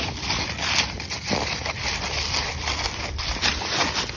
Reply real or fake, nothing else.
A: real